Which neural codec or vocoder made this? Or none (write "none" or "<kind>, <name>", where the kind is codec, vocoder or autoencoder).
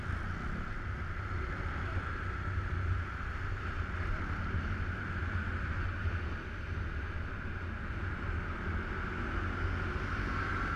none